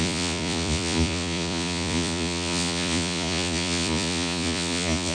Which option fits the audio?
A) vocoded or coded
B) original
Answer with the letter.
A